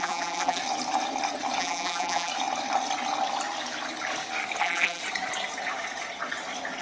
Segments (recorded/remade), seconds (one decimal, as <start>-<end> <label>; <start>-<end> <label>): 0.0-0.6 remade; 0.6-1.6 recorded; 1.6-2.3 remade; 2.3-4.6 recorded; 4.6-5.0 remade; 5.0-6.8 recorded